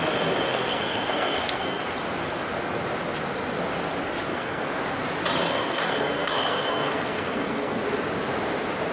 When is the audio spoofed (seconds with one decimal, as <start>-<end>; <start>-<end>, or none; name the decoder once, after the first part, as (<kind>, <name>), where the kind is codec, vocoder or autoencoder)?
0.5-1.8 (codec, SNAC); 4.3-4.8; 5.4-7.8